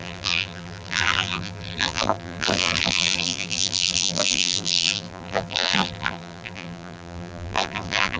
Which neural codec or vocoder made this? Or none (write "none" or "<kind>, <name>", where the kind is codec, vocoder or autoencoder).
vocoder, BigVGAN v2